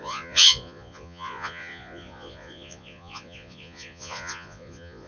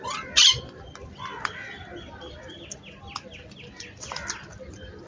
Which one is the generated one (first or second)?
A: first